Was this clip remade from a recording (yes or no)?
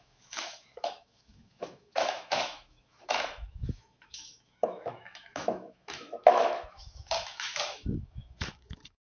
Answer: yes